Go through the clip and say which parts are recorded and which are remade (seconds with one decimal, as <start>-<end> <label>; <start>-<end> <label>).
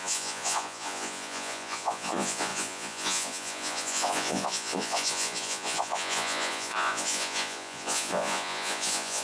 0.0-9.2 remade